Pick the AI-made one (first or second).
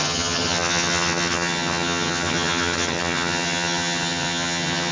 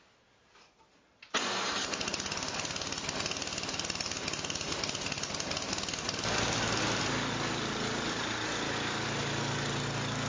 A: first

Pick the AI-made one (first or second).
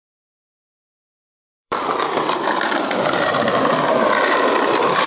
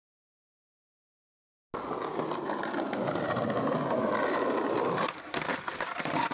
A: first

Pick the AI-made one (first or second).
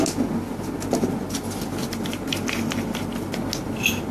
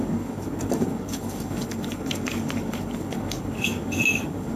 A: second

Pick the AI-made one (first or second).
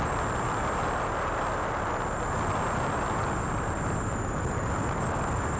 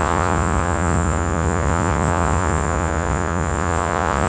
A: second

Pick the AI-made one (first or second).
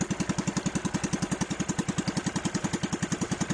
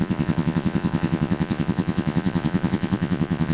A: second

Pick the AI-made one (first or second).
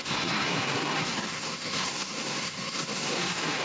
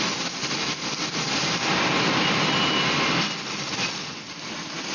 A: first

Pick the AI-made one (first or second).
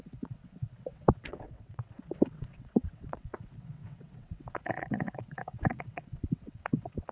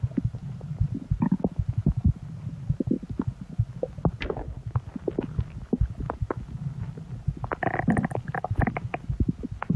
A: first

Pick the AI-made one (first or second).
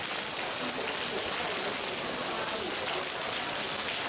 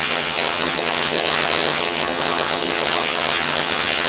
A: second